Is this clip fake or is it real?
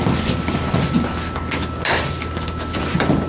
real